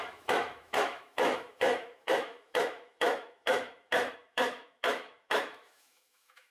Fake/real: fake